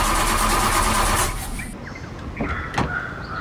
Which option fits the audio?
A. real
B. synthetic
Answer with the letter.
A